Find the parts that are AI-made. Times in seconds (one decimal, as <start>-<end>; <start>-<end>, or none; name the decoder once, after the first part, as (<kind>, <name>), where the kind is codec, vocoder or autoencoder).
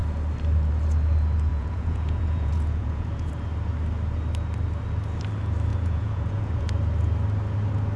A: 1.5-3.3 (vocoder, Vocos); 5.7-6.6